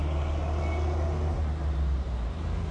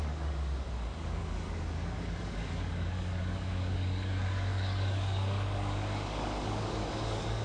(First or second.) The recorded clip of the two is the first